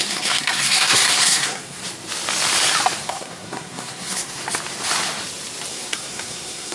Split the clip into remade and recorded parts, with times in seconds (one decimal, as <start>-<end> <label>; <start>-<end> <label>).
0.0-1.8 remade; 1.8-3.0 recorded; 3.0-4.4 remade; 4.4-5.7 recorded; 5.7-6.7 remade